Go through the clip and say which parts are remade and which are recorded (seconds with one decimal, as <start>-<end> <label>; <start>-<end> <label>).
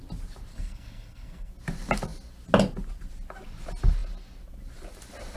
0.0-0.5 recorded; 0.5-1.5 remade; 1.5-5.4 recorded